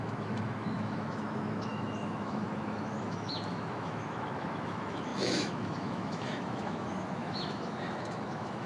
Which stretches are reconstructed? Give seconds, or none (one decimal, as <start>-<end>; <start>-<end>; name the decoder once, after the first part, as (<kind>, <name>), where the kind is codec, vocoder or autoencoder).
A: 0.0-8.7 (autoencoder, DAC-VAE)